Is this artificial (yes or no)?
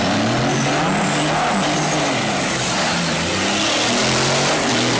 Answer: no